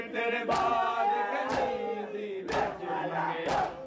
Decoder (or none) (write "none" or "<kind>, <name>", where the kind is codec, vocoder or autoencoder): none